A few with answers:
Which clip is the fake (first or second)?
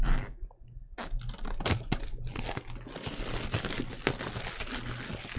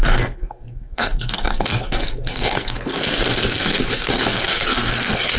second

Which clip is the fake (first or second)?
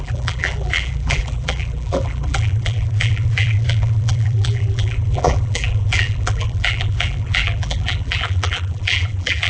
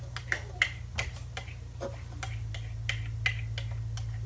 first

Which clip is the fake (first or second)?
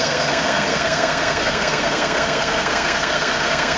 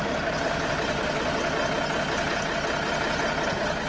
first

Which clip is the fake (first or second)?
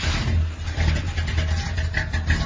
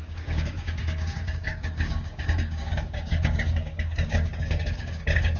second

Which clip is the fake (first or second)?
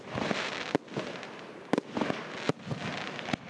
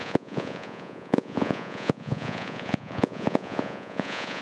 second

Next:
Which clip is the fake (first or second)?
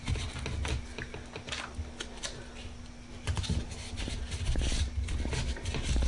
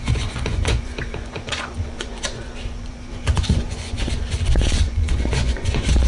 second